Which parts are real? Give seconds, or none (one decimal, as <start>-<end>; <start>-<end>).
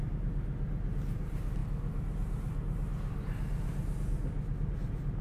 0.0-5.2